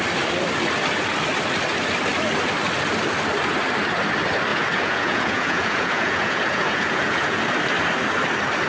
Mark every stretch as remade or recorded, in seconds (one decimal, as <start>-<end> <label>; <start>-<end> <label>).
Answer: 0.0-4.5 recorded; 4.5-7.4 remade; 7.4-8.7 recorded

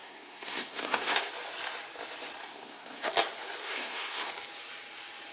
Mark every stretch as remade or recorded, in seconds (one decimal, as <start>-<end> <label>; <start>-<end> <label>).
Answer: 0.0-1.3 remade; 1.3-2.5 recorded; 2.5-3.1 remade; 3.1-3.6 recorded; 3.6-4.3 remade; 4.3-5.3 recorded